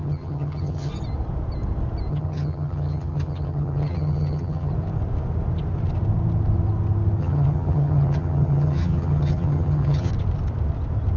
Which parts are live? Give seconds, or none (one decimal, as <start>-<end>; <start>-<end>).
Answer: 0.9-2.1; 4.7-7.2; 10.1-11.2